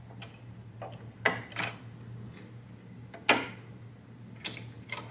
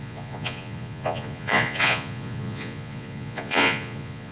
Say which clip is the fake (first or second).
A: second